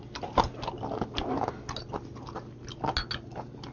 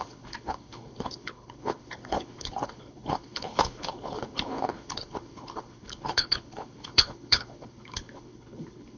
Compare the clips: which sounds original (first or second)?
first